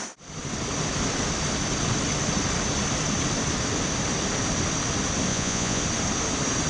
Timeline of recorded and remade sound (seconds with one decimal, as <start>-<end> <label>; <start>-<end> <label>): 0.0-5.3 recorded; 5.3-5.8 remade; 5.8-6.7 recorded